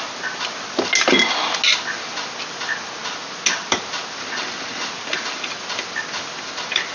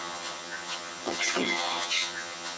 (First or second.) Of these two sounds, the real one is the first